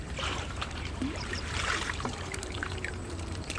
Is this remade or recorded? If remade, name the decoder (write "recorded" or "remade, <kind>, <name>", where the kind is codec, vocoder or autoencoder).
remade, vocoder, BigVGAN v2